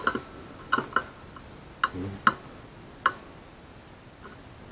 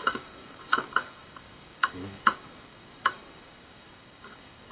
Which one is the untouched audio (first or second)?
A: first